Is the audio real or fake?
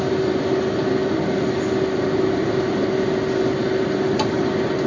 real